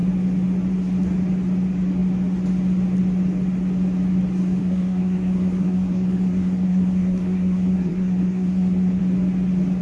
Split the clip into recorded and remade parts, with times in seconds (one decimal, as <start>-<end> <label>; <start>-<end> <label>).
0.0-4.6 recorded; 4.6-9.0 remade; 9.0-9.8 recorded